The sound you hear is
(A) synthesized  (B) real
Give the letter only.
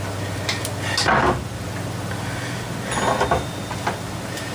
B